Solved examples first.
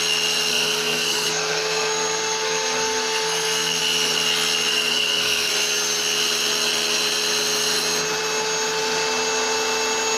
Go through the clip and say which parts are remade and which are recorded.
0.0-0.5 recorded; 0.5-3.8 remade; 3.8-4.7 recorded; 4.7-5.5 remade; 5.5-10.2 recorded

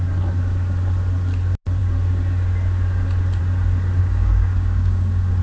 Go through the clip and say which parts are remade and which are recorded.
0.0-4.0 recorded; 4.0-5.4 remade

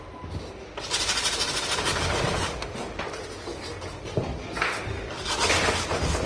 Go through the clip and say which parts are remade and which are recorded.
0.0-6.3 recorded

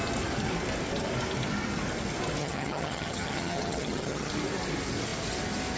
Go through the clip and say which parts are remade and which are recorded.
0.0-2.4 recorded; 2.4-4.3 remade; 4.3-5.8 recorded

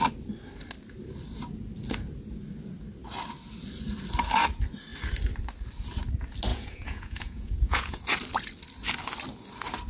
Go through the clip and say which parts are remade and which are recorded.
0.0-6.5 recorded; 6.5-8.0 remade; 8.0-9.9 recorded

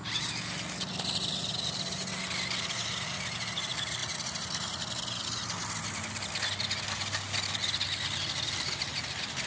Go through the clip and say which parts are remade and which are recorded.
0.0-9.5 recorded

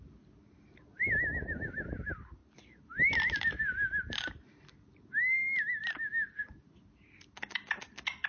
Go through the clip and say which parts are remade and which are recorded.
0.0-8.3 recorded

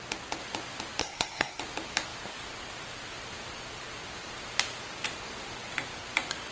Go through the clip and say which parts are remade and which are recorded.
0.0-1.0 recorded; 1.0-1.6 remade; 1.6-6.5 recorded